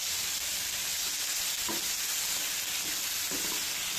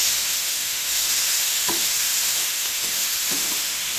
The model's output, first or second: second